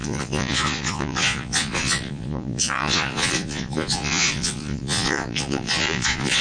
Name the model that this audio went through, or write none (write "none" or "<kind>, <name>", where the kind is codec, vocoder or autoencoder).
vocoder, Vocos